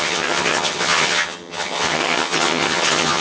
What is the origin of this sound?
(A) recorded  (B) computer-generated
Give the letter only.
B